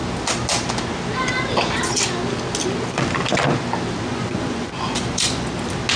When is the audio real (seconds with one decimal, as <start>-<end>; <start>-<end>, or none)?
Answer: 0.0-4.1; 5.5-6.0